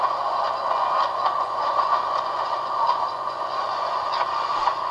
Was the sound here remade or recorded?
remade